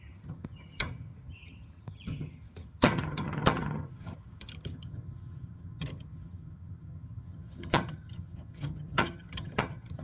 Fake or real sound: fake